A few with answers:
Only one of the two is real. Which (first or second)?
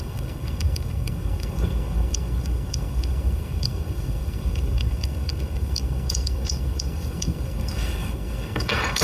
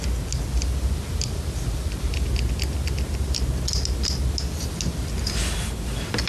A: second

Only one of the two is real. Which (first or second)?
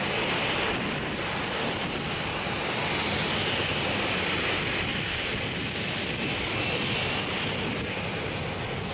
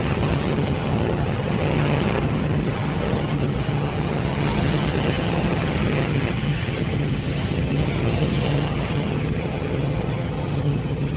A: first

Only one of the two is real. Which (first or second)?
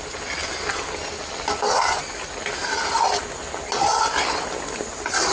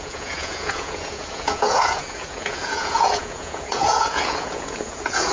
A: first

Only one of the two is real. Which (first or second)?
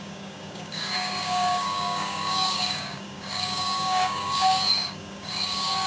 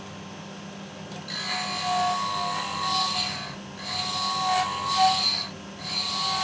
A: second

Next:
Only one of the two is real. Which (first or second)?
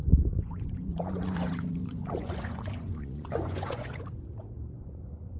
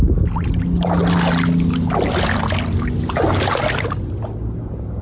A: second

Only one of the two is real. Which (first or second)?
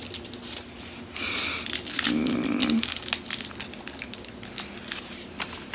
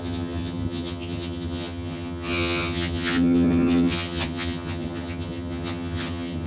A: first